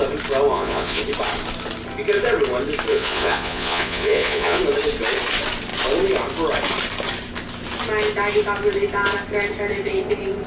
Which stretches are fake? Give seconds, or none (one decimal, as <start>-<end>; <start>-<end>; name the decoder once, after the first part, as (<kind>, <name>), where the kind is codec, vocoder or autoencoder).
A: 0.5-1.0 (vocoder, Vocos); 2.9-4.6